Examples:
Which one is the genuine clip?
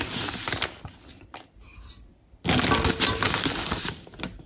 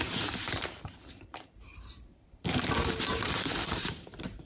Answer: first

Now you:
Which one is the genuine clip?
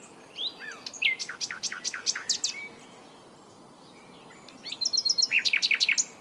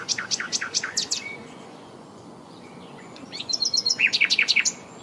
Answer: first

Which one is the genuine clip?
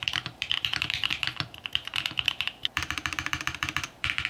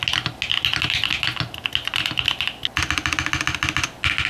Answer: second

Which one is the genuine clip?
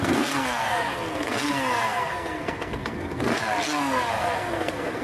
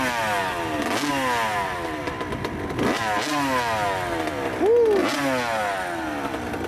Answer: second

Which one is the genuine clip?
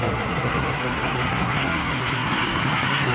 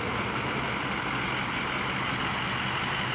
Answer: second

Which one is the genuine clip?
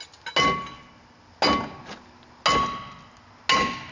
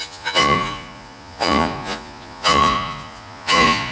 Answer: first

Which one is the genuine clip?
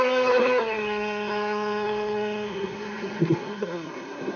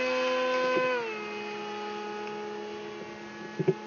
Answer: second